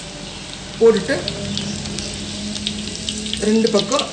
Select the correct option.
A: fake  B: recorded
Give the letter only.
B